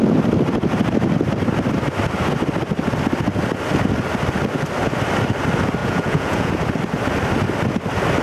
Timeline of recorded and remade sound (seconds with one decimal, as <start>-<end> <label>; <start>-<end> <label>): 0.0-5.8 recorded; 5.8-6.5 remade; 6.5-8.2 recorded